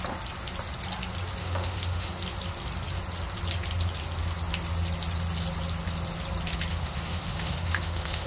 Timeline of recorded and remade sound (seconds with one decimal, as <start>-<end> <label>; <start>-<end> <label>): 0.0-1.4 recorded; 1.4-2.1 remade; 2.1-6.7 recorded; 6.7-8.3 remade